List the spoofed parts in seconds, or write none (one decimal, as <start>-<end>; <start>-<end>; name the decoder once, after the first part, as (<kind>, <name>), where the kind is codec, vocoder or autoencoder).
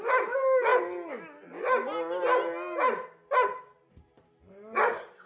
none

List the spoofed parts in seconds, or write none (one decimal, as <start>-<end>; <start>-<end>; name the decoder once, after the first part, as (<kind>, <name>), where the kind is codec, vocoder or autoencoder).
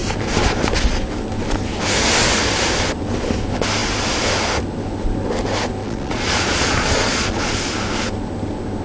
5.8-7.5 (vocoder, Vocos)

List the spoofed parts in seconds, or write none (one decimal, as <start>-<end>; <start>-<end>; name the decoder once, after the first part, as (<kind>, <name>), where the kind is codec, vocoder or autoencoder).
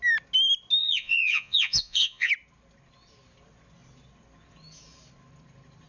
0.8-2.3 (vocoder, Vocos)